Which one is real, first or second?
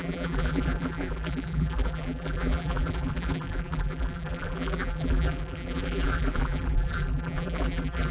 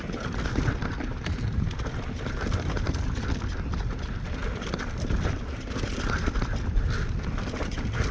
second